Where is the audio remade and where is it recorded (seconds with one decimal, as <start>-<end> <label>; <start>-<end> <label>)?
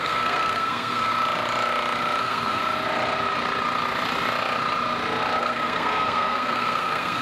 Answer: 0.0-1.1 remade; 1.1-2.2 recorded; 2.2-2.6 remade; 2.6-5.4 recorded; 5.4-7.2 remade